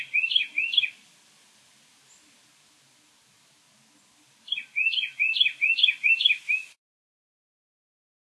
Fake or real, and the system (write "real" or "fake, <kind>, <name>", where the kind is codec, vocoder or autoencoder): real